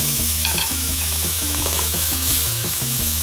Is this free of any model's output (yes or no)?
no